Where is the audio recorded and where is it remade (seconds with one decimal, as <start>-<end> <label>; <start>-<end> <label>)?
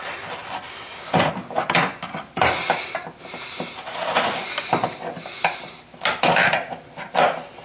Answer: 0.0-7.6 recorded